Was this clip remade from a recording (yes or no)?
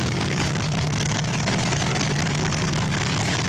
yes